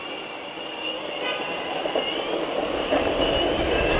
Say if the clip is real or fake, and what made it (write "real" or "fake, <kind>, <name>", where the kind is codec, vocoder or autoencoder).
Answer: real